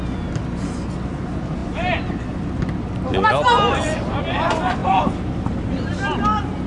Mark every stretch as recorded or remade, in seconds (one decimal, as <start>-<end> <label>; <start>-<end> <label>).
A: 0.0-4.8 recorded; 4.8-5.7 remade; 5.7-6.7 recorded